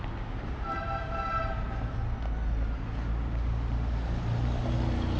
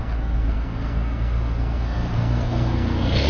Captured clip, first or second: first